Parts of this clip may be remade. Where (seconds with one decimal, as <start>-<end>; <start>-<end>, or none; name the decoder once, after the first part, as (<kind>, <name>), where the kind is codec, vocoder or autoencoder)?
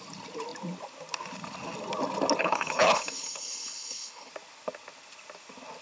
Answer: 2.4-4.3 (codec, HILCodec)